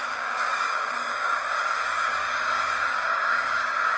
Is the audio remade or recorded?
remade